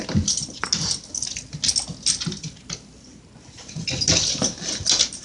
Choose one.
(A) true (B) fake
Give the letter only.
A